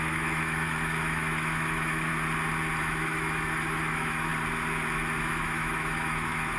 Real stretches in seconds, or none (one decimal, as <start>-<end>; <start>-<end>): 2.1-2.8; 4.3-5.2